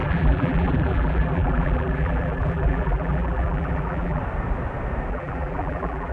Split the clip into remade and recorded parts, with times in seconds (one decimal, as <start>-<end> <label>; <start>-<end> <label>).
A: 0.0-4.2 remade; 4.2-5.1 recorded; 5.1-6.1 remade